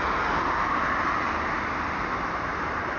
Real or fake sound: real